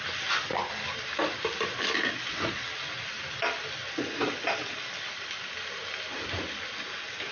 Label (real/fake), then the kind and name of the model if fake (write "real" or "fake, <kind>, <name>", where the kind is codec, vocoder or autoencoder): real